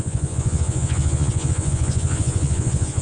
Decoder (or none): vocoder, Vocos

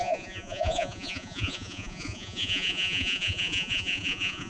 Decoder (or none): vocoder, Vocos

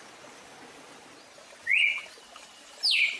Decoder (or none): none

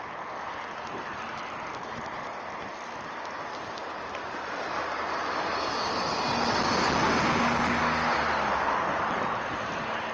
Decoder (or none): none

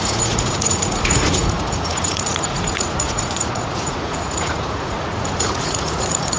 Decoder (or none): vocoder, Vocos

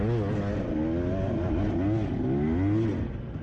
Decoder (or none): none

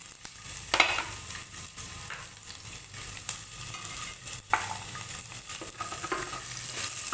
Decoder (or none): none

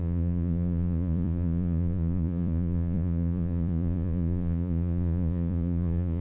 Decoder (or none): vocoder, Vocos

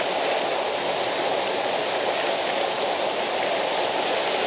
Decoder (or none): none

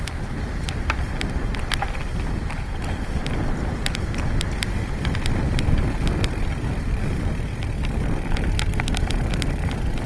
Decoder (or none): none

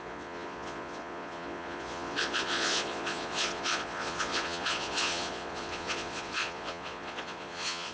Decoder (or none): vocoder, Vocos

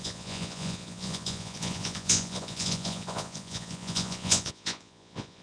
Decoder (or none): vocoder, Vocos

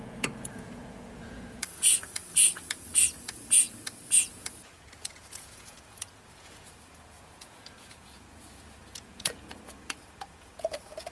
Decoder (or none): vocoder, Vocos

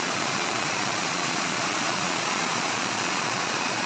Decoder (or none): vocoder, Vocos